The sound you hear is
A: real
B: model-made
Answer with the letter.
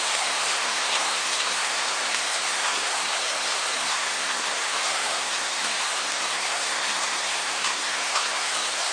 B